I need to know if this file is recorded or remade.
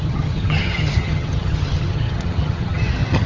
remade